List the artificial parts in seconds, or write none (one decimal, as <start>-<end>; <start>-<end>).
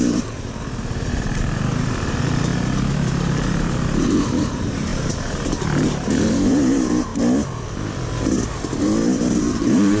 0.0-2.5; 3.3-7.1; 9.4-10.0